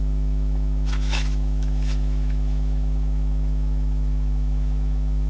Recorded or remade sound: remade